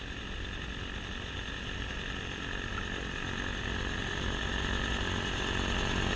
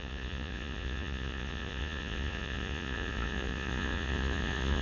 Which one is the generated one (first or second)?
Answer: second